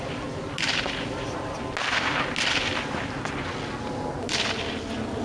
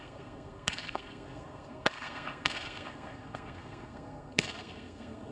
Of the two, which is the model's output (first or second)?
second